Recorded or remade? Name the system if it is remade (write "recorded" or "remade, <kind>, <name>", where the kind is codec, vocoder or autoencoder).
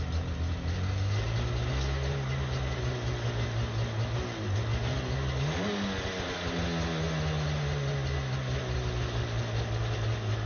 recorded